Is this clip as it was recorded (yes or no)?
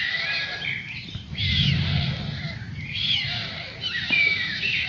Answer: yes